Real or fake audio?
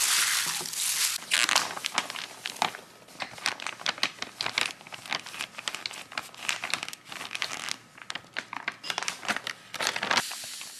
real